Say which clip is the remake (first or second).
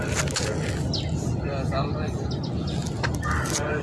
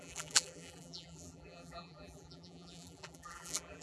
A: second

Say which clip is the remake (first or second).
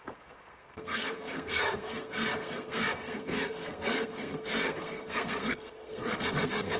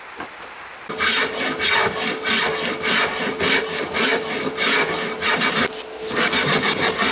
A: first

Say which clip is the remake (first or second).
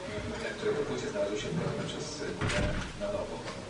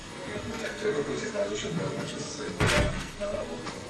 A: second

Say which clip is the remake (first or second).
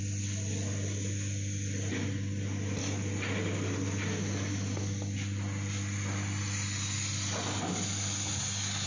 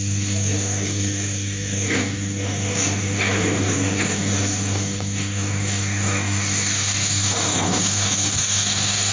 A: second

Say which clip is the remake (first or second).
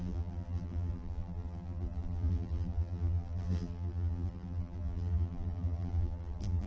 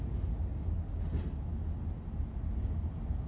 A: first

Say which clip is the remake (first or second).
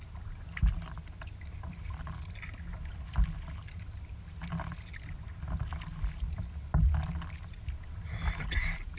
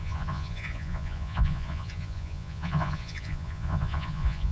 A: second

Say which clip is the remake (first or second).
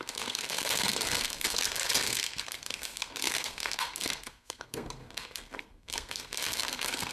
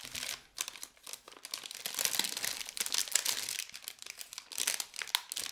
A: first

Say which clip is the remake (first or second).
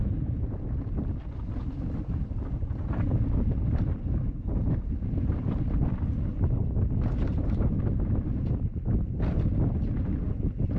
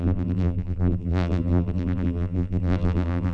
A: second